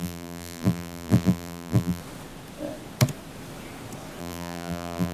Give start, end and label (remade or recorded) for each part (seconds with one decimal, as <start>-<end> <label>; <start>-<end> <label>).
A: 0.0-2.0 remade; 2.0-4.2 recorded; 4.2-5.1 remade

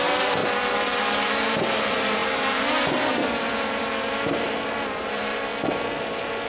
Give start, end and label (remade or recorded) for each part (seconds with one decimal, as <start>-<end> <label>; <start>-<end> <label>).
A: 0.0-0.4 remade; 0.4-1.0 recorded; 1.0-5.5 remade; 5.5-6.5 recorded

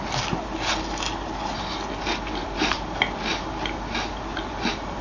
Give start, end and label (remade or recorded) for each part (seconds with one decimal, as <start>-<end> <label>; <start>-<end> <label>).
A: 0.0-2.4 recorded; 2.4-3.0 remade; 3.0-5.0 recorded

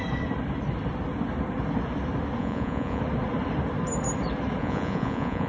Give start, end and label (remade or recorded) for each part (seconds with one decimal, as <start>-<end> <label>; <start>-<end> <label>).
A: 0.0-2.4 recorded; 2.4-3.0 remade; 3.0-4.6 recorded; 4.6-5.5 remade

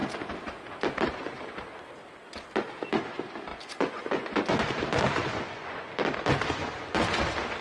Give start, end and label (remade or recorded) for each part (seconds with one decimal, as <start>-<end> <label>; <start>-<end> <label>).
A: 0.0-3.5 recorded; 3.5-4.6 remade; 4.6-5.2 recorded; 5.2-5.9 remade; 5.9-7.6 recorded

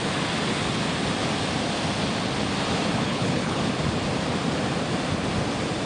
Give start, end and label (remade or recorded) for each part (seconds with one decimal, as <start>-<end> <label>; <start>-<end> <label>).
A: 0.0-2.9 recorded; 2.9-3.6 remade; 3.6-5.9 recorded